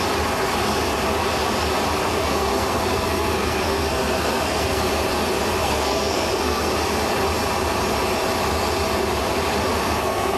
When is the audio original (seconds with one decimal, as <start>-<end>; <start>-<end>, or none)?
0.0-2.0; 4.9-5.6; 6.7-9.7